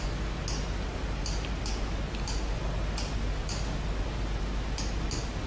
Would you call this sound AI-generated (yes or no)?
no